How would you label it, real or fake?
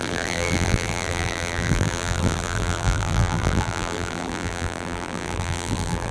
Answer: fake